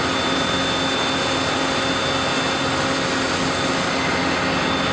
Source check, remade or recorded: recorded